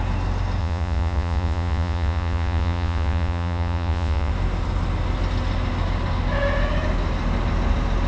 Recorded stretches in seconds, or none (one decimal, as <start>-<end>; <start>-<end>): 0.0-0.6; 4.3-8.1